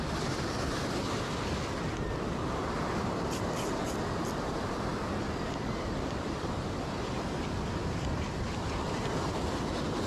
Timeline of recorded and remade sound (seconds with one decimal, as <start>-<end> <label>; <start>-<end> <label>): 0.0-4.9 remade; 4.9-5.5 recorded; 5.5-10.1 remade